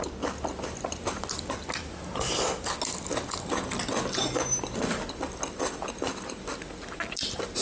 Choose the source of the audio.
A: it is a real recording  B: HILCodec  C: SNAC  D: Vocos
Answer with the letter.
A